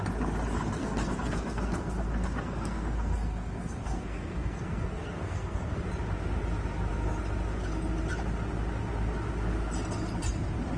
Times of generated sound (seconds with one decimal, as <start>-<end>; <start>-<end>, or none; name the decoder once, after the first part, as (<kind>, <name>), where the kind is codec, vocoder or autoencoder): 0.8-5.8 (codec, SNAC)